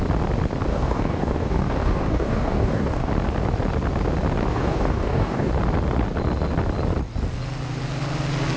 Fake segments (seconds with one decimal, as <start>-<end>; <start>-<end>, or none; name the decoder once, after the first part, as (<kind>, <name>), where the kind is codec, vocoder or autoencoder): 0.7-3.1 (codec, DAC); 4.5-5.5